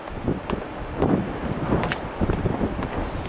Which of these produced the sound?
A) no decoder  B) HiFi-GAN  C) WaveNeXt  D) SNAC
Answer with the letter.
A